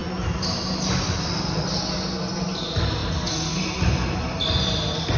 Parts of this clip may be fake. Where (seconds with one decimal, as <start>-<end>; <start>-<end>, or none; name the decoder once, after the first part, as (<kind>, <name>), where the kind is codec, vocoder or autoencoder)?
none